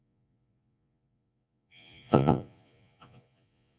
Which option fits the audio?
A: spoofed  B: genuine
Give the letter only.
A